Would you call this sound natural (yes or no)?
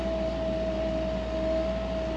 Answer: yes